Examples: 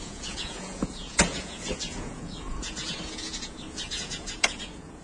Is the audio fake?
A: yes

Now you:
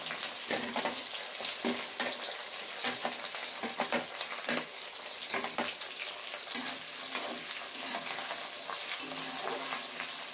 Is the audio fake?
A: no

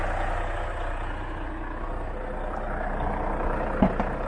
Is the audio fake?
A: no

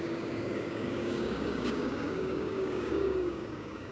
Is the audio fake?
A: yes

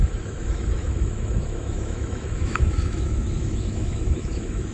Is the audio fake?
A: yes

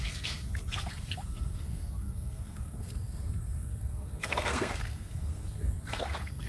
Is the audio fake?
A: yes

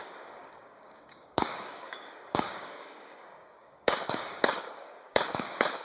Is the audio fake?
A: yes